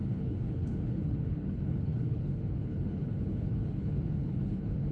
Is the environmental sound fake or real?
fake